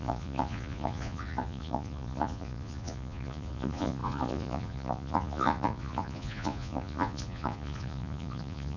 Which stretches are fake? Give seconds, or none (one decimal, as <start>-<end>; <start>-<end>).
0.0-8.8